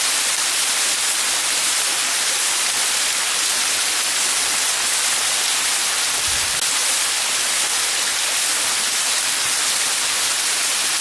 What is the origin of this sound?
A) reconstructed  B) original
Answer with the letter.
B